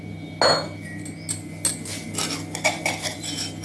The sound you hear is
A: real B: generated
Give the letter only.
A